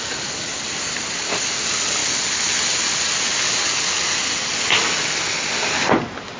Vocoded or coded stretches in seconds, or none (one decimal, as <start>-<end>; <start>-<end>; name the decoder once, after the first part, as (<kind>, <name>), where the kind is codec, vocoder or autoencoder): 0.5-1.5 (vocoder, BigVGAN v2)